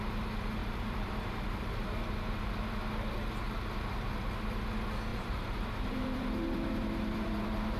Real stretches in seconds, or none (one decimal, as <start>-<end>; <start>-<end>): 0.0-0.6; 2.8-5.1